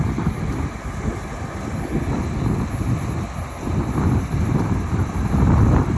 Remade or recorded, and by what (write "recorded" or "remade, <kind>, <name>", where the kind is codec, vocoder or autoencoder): recorded